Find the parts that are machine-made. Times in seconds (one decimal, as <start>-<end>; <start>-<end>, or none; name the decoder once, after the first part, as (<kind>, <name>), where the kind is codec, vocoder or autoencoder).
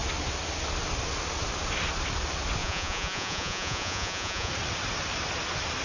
2.6-4.5 (vocoder, Vocos)